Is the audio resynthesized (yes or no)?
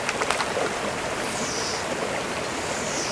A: no